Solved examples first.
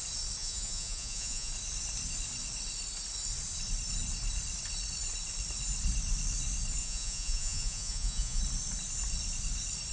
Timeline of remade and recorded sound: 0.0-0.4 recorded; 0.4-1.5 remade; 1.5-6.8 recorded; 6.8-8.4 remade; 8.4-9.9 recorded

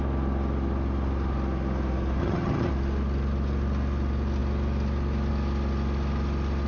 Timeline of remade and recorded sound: 0.0-2.2 recorded; 2.2-2.7 remade; 2.7-6.7 recorded